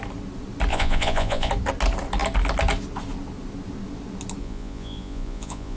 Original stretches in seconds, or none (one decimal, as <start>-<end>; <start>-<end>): 0.0-0.7; 1.5-4.4